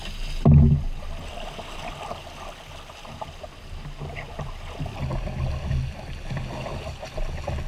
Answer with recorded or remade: recorded